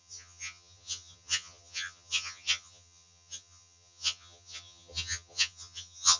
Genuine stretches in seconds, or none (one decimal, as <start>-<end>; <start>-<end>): none